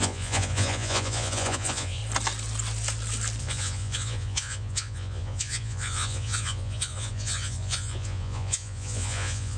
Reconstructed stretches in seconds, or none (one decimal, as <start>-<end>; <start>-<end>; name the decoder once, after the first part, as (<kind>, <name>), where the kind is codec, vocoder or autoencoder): 0.0-2.0 (vocoder, Vocos); 3.4-9.6